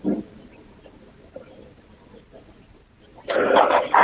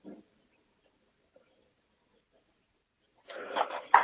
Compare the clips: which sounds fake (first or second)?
second